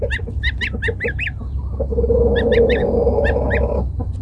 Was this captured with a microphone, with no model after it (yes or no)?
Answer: yes